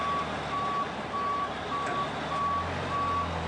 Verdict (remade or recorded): recorded